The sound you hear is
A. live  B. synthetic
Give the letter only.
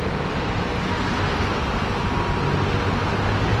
A